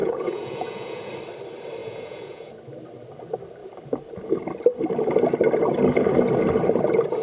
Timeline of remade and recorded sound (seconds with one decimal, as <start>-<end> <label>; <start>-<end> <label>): 0.0-1.1 remade; 1.1-1.8 recorded; 1.8-2.5 remade; 2.5-7.2 recorded